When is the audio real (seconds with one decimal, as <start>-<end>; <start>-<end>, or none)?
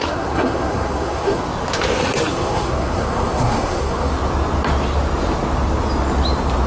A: 1.4-2.3; 4.1-6.7